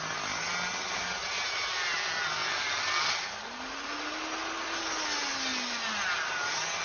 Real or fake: fake